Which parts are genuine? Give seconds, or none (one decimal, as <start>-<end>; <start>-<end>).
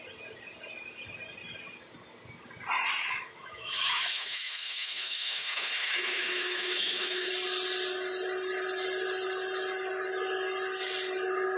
0.0-3.0; 7.3-11.6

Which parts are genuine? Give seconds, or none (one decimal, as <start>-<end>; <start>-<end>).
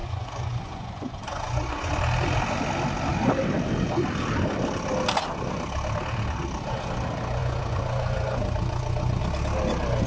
1.9-7.4; 9.2-10.1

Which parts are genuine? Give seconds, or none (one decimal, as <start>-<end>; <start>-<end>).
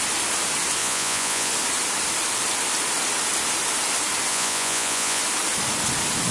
0.0-0.8; 1.5-4.3; 5.2-6.3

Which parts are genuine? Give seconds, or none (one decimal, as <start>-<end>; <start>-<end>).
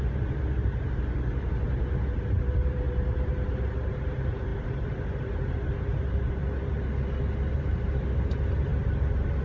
6.4-7.5; 8.7-9.4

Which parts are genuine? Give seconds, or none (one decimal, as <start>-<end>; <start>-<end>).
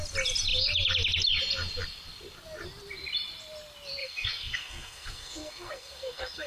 0.0-4.0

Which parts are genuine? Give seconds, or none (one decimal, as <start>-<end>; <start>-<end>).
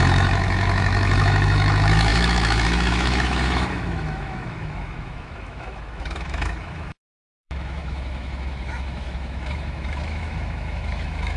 none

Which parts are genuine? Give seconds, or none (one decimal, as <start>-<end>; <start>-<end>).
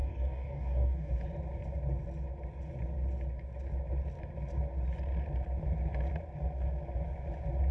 1.1-7.7